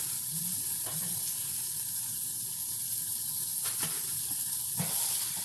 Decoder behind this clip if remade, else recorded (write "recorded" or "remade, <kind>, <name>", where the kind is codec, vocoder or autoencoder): remade, vocoder, BigVGAN v2